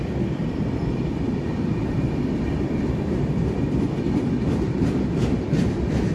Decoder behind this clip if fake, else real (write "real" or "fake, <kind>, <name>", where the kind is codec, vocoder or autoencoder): fake, vocoder, BigVGAN v2